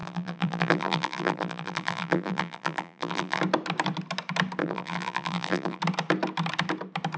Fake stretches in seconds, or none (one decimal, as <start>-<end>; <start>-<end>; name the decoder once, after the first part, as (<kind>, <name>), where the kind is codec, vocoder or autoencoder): 0.0-3.4 (vocoder, BigVGAN v2); 4.6-5.8